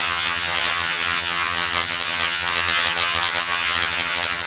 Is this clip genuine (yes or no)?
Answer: no